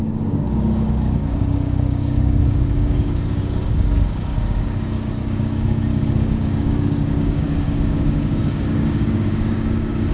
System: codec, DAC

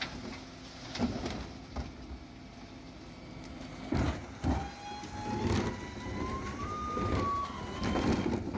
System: none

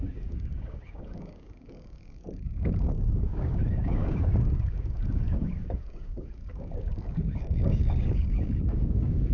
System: codec, DAC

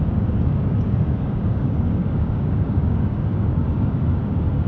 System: codec, DAC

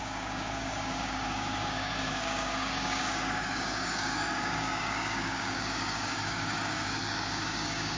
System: codec, DAC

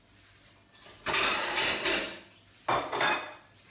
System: none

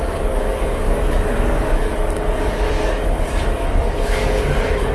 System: codec, DAC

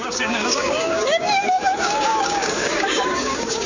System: codec, DAC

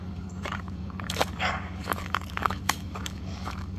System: codec, DAC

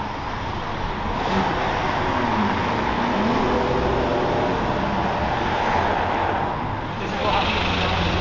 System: none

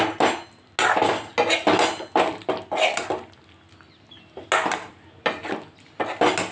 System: none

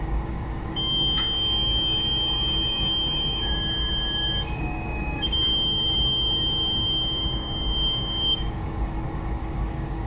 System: codec, DAC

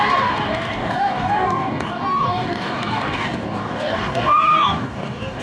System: codec, DAC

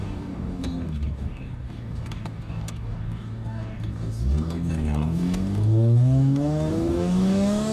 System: codec, DAC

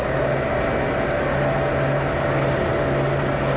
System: none